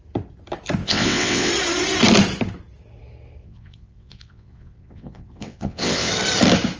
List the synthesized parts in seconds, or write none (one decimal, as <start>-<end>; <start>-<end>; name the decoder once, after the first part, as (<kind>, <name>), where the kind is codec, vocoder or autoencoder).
0.8-1.5 (vocoder, WaveNeXt); 3.4-6.1